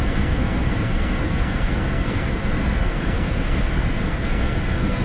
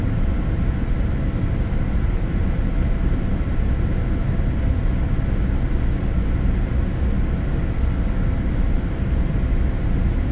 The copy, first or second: first